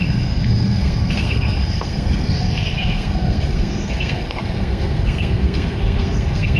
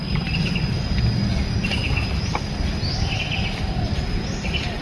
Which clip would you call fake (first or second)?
first